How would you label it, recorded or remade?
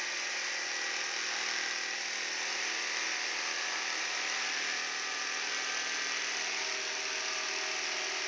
recorded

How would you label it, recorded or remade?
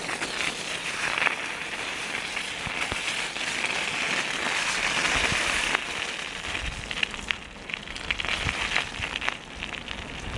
recorded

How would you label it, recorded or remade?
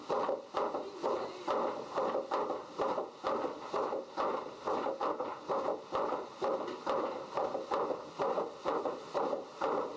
recorded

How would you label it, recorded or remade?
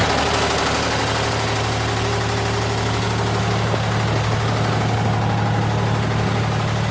recorded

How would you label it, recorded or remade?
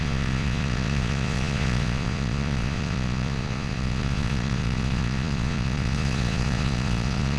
remade